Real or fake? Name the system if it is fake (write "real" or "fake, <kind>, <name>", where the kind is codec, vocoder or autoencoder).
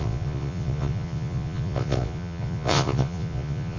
fake, vocoder, Vocos